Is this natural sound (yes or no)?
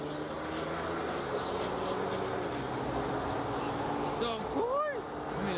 yes